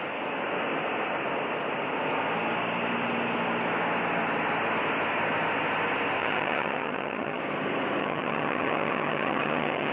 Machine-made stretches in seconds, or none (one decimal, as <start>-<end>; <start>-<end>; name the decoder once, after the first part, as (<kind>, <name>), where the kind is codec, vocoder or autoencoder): 6.2-7.4 (vocoder, HiFi-GAN); 8.0-9.9